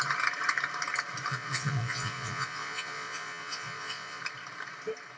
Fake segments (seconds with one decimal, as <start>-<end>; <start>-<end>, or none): 1.3-4.2